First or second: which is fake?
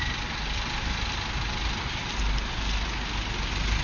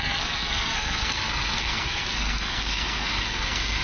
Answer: second